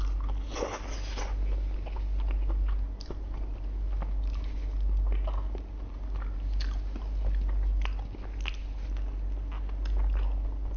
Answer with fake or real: real